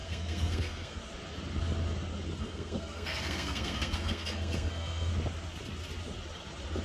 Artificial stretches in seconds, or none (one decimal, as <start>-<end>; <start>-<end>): 0.0-1.0; 2.4-5.1